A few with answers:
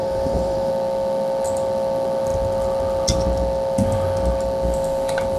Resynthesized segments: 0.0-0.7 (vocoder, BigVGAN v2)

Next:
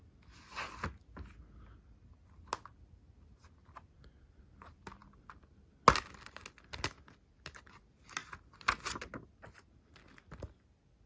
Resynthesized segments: none

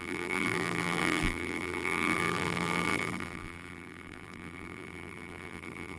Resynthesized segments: 0.0-6.0 (vocoder, BigVGAN v2)

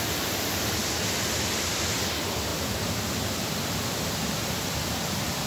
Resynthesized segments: 2.5-4.1 (vocoder, BigVGAN v2)

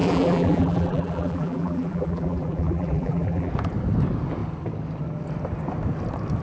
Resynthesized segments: 0.0-3.5 (vocoder, BigVGAN v2)

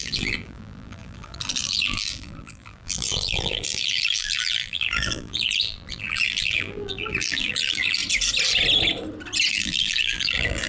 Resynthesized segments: 0.0-8.0 (vocoder, BigVGAN v2); 9.5-10.7

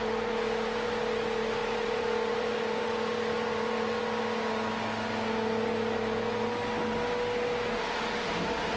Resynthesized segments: 1.6-4.0 (vocoder, BigVGAN v2)